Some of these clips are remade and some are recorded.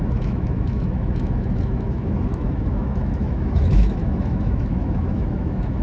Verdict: remade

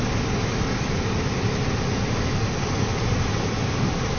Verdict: recorded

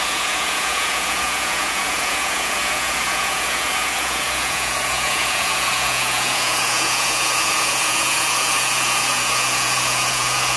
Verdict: remade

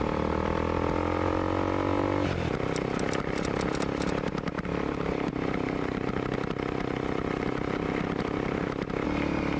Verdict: recorded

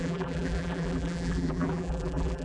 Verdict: remade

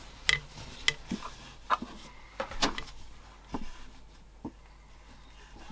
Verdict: recorded